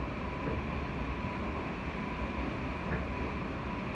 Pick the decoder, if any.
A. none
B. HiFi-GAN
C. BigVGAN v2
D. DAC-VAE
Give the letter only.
A